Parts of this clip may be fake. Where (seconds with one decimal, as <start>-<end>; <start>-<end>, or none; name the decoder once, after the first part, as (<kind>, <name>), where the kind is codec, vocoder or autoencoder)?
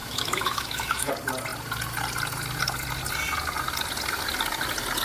0.0-1.1 (autoencoder, DAC-VAE)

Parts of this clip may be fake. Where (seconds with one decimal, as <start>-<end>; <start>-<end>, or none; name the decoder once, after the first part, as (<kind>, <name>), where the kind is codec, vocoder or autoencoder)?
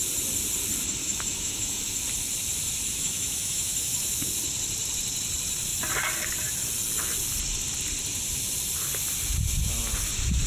1.0-1.8 (autoencoder, DAC-VAE); 2.9-4.3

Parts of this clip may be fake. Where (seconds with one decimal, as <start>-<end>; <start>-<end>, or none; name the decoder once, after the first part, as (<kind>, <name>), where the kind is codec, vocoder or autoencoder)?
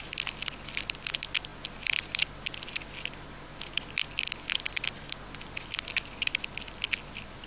none